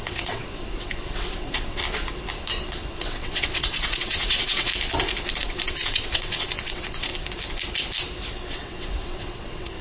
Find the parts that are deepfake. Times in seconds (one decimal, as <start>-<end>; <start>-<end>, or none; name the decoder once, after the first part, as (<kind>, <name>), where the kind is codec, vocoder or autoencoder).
0.0-1.8 (vocoder, WaveNeXt); 2.9-4.7; 5.4-7.1; 8.5-9.8